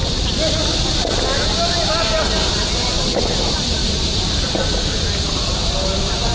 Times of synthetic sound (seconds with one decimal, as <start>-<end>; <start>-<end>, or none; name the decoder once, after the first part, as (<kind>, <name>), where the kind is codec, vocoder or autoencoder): 3.8-4.5 (vocoder, BigVGAN v2)